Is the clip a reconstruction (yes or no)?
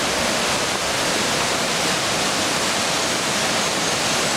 no